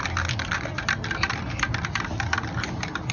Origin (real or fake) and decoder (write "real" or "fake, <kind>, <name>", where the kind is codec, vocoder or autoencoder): real